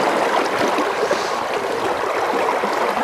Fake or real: real